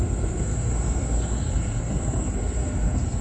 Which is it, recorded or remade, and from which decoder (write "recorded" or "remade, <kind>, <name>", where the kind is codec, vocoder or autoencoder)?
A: remade, codec, SNAC